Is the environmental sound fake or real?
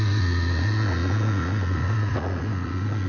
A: fake